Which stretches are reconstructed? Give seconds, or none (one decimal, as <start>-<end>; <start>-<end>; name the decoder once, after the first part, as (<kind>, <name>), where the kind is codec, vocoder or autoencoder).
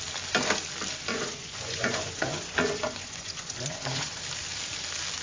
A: 1.1-4.2 (vocoder, Vocos)